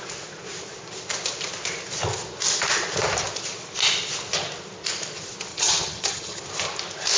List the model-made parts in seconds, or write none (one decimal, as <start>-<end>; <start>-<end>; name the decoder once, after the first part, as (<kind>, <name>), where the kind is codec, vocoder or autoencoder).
5.5-6.4 (vocoder, HiFi-GAN)